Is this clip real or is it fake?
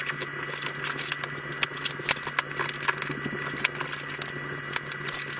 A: real